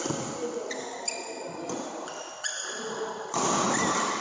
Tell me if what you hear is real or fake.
real